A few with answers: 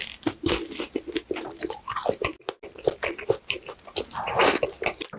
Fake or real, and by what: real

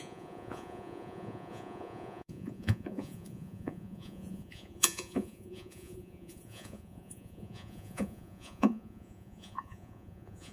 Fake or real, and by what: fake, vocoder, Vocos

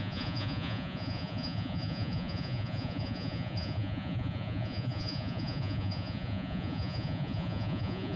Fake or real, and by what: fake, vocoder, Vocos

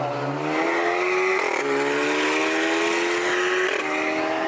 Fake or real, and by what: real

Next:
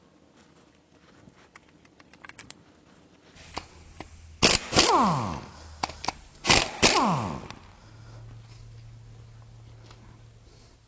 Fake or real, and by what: real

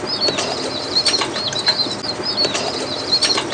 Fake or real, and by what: real